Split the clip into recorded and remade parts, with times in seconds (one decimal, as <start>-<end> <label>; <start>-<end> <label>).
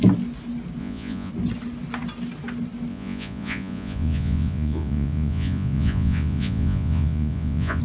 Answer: 0.0-0.8 recorded; 0.8-1.3 remade; 1.3-2.9 recorded; 2.9-7.8 remade